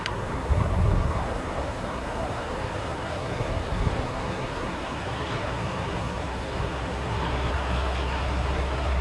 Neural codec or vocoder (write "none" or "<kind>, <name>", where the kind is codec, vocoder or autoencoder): codec, SNAC